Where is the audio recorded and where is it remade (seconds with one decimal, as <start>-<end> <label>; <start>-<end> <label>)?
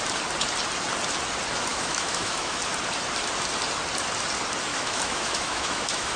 0.0-1.7 recorded; 1.7-2.6 remade; 2.6-4.7 recorded; 4.7-6.2 remade